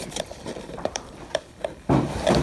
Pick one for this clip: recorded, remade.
remade